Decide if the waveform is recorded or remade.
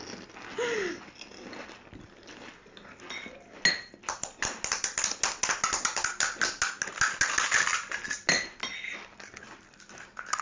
recorded